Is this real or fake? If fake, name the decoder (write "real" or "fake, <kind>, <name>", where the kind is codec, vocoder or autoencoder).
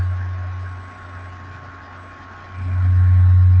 real